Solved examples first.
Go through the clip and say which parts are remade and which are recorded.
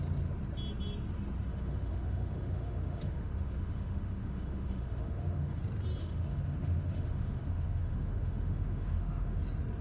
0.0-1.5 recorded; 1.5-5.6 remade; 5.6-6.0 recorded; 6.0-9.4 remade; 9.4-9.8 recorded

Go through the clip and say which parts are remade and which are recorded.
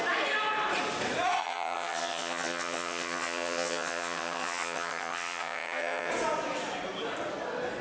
0.0-1.4 recorded; 1.4-6.1 remade; 6.1-7.8 recorded